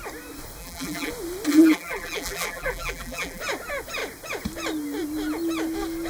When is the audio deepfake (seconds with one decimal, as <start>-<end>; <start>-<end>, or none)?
0.6-1.1; 1.5-3.4